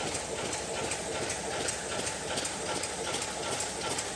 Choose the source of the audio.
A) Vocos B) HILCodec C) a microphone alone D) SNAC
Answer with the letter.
C